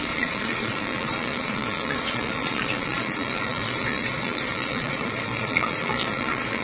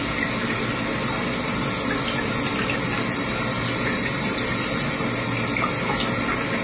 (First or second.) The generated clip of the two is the first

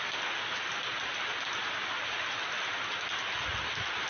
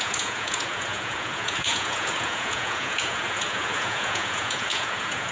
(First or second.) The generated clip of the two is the second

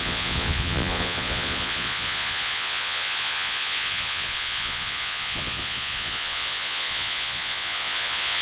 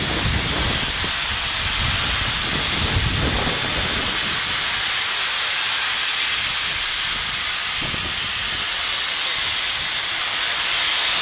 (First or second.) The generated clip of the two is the first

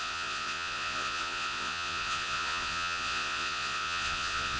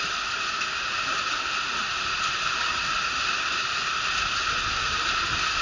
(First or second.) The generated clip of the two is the first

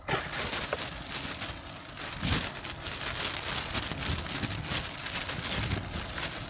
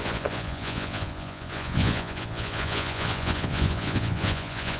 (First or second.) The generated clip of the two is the second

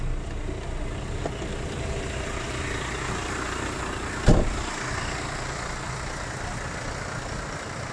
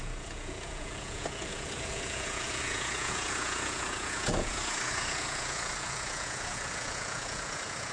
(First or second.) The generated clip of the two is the second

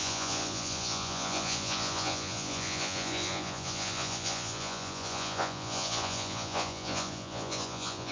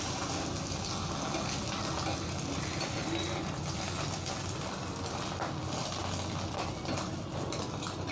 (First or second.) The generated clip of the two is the first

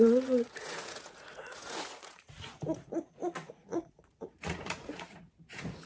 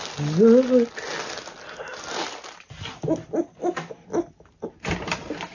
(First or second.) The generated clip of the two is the first